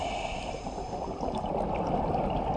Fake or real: real